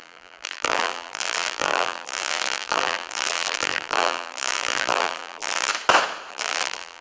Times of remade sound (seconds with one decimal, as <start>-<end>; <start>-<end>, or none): 0.0-5.7; 6.3-7.0